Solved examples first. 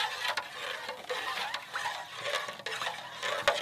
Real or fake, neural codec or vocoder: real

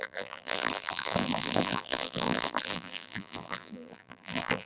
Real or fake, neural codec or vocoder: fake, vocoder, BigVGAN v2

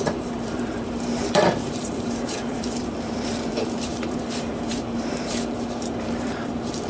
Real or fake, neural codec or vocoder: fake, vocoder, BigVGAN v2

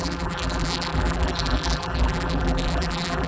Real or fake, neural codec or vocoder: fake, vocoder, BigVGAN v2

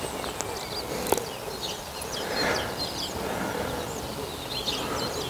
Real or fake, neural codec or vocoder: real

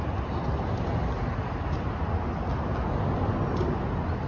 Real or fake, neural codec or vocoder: real